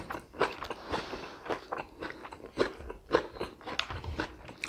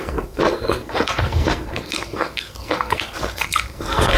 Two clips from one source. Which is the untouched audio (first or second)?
first